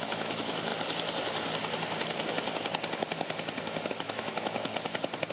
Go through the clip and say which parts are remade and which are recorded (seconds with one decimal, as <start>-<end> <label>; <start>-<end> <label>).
0.0-0.7 remade; 0.7-3.9 recorded; 3.9-4.7 remade; 4.7-5.3 recorded